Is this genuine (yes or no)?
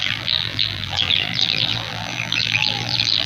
no